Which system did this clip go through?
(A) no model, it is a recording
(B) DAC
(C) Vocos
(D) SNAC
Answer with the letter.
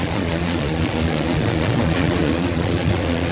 C